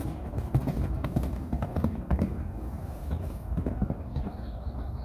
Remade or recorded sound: remade